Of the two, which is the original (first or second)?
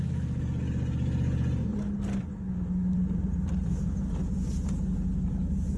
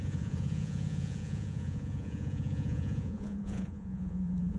first